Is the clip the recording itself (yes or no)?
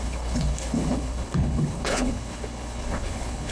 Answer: no